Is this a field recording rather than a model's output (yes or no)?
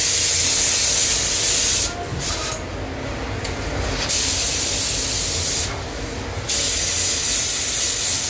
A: yes